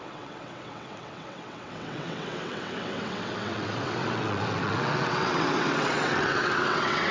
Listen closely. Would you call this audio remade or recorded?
remade